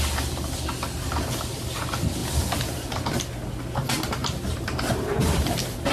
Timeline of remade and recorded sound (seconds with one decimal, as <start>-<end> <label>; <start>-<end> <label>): 0.0-4.2 recorded; 4.2-5.9 remade